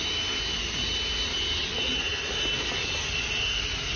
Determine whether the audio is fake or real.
real